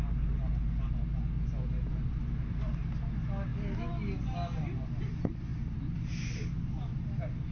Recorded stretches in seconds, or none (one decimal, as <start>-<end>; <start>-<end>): 0.0-1.9; 2.9-5.5; 6.7-7.5